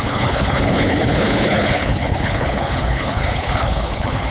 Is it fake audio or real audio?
fake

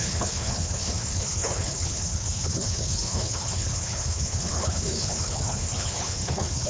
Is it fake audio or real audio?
fake